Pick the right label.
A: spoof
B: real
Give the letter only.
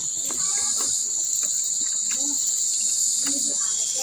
B